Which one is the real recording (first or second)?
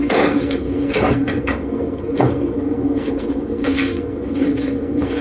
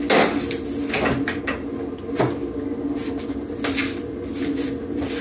second